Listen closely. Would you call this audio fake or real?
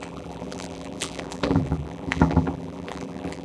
fake